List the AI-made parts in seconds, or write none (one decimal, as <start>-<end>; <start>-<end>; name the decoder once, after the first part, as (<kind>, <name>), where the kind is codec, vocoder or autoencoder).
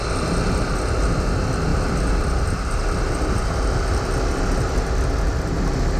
none